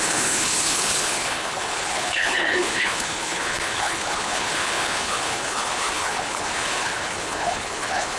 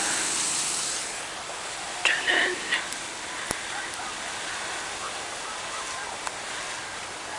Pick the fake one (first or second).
first